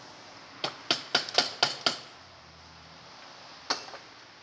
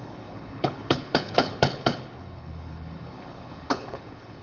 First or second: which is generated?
second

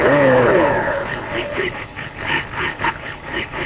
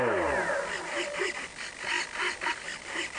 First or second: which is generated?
first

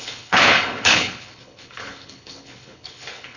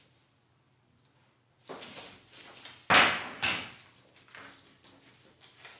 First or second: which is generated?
first